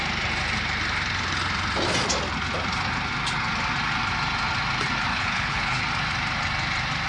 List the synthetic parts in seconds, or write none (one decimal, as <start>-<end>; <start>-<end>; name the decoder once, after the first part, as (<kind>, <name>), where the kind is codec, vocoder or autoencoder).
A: 5.1-5.8 (codec, HILCodec)